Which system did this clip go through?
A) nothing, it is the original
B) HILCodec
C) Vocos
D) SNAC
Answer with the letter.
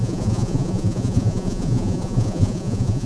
C